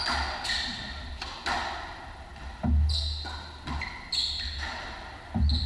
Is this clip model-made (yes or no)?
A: no